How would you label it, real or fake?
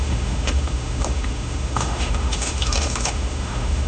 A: fake